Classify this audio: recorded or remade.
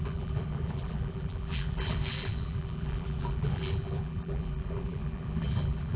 remade